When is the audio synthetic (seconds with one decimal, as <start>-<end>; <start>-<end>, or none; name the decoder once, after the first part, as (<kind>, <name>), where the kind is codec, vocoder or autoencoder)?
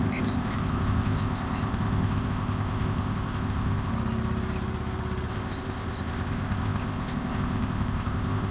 0.0-3.9 (codec, ZipCodec); 5.3-8.5